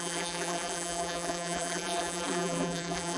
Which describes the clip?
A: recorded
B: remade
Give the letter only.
B